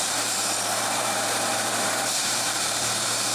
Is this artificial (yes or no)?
yes